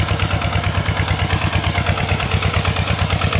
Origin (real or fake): fake